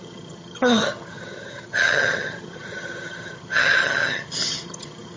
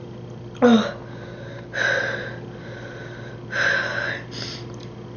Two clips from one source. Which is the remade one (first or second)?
first